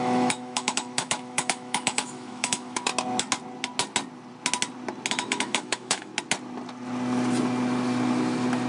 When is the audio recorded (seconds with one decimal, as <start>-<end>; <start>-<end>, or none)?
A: 2.9-5.1; 6.1-8.7